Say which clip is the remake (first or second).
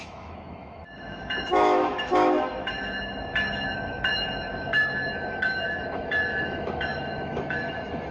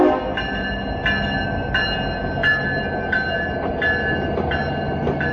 first